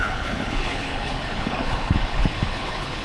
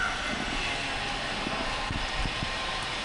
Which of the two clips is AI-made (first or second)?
first